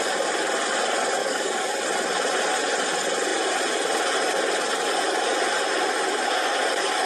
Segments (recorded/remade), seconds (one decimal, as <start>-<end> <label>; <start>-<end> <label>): 0.0-1.2 recorded; 1.2-1.8 remade; 1.8-7.1 recorded